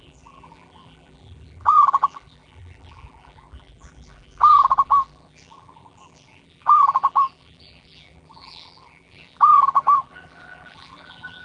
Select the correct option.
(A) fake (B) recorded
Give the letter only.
A